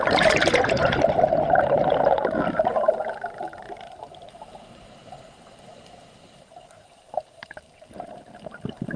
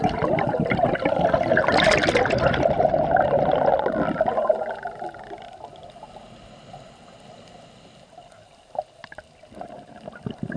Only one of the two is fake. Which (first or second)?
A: first